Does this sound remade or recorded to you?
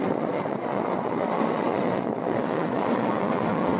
remade